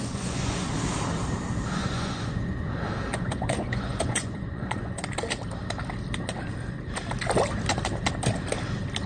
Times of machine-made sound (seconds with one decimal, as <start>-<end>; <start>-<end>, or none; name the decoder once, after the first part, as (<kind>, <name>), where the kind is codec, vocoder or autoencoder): 0.0-0.7 (vocoder, Vocos); 1.8-2.7; 3.1-5.0